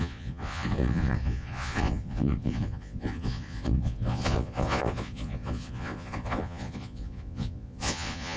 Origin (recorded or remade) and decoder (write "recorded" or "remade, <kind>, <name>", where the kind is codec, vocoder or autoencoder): remade, vocoder, Vocos